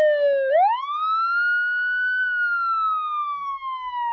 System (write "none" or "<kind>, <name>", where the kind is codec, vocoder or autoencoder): none